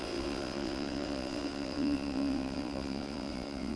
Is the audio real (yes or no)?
no